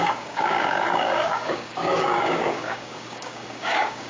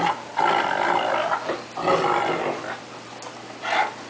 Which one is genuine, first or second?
second